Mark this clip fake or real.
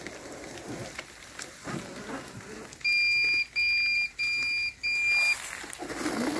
real